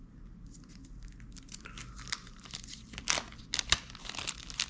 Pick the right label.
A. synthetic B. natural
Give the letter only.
B